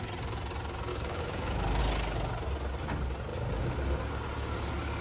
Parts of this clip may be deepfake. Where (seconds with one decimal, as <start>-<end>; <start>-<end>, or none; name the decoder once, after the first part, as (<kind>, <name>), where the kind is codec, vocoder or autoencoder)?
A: 0.9-1.8 (codec, DAC)